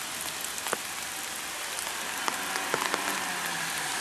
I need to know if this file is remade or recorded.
recorded